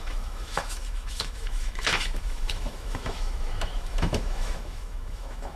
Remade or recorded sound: remade